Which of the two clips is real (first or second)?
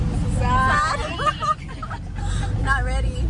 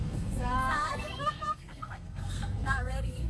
first